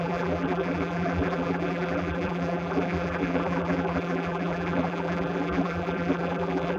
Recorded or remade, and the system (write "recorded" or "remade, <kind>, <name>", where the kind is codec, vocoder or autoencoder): remade, vocoder, BigVGAN v2